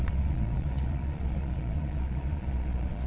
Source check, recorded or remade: remade